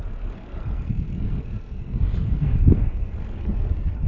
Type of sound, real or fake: fake